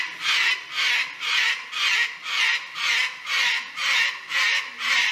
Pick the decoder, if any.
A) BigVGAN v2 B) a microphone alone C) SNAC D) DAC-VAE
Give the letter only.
B